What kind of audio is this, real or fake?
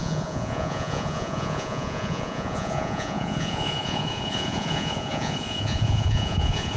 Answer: fake